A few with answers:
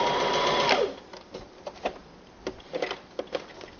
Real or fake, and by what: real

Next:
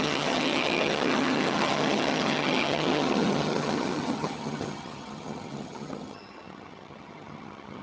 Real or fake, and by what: fake, vocoder, HiFi-GAN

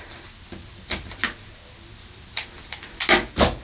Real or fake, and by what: real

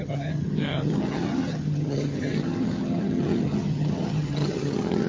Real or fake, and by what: fake, vocoder, HiFi-GAN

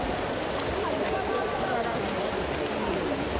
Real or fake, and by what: real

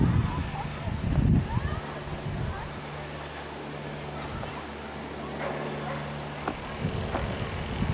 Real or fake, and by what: real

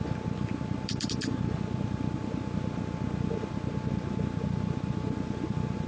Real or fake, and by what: real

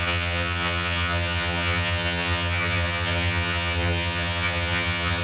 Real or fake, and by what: fake, vocoder, HiFi-GAN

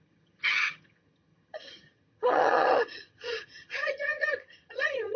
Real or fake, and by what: fake, vocoder, HiFi-GAN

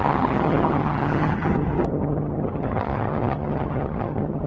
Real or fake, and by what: fake, vocoder, HiFi-GAN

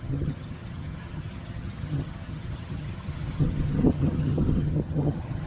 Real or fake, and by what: fake, vocoder, HiFi-GAN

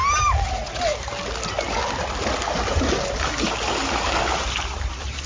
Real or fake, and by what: real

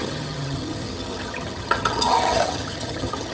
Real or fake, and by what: fake, vocoder, HiFi-GAN